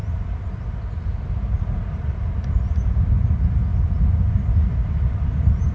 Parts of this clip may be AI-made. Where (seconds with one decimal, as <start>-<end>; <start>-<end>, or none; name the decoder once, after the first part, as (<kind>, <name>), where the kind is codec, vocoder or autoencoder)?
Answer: 0.0-2.9 (vocoder, BigVGAN v2)